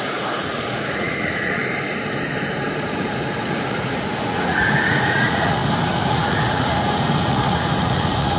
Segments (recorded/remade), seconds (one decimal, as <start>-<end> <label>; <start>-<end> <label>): 0.0-1.6 remade; 1.6-2.8 recorded; 2.8-5.6 remade; 5.6-6.1 recorded; 6.1-8.4 remade